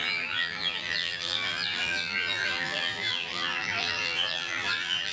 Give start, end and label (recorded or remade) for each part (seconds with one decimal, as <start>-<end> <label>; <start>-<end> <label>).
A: 0.0-5.1 remade